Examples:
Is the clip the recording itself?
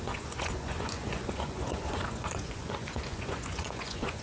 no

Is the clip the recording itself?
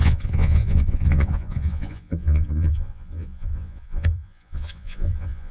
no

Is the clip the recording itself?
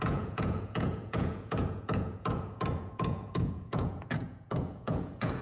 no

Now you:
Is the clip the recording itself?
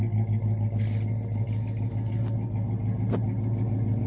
yes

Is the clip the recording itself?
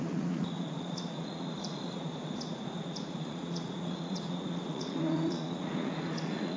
no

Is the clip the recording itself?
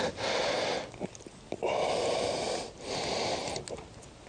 yes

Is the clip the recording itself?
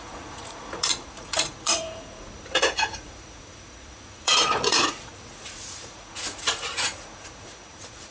no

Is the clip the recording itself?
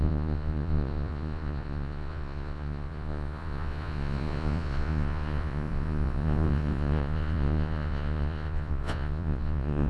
no